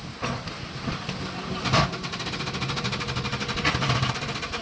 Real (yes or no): yes